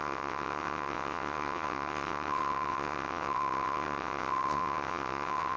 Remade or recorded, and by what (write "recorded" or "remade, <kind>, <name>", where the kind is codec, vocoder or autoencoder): remade, vocoder, WaveNeXt